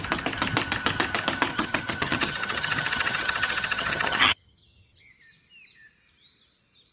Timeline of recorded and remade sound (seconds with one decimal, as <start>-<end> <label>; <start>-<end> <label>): 0.0-1.5 recorded; 1.5-5.1 remade; 5.1-6.9 recorded